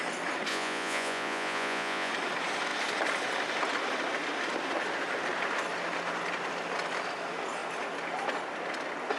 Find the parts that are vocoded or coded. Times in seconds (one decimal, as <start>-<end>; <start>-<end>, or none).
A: 0.5-2.1